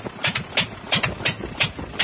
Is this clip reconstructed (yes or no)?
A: no